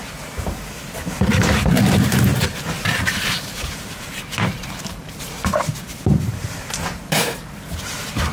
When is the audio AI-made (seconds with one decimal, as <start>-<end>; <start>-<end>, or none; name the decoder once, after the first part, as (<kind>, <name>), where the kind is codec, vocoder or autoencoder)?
0.0-8.3 (vocoder, BigVGAN v2)

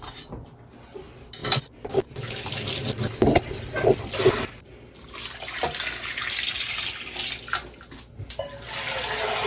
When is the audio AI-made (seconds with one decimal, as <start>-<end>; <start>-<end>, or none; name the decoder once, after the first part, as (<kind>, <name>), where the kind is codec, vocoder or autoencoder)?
none

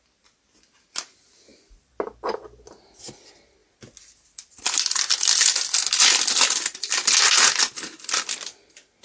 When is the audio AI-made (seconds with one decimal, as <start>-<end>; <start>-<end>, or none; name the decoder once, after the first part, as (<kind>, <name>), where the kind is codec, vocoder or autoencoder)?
none